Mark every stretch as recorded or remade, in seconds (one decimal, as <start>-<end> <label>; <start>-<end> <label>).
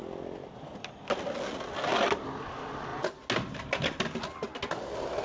0.0-5.2 recorded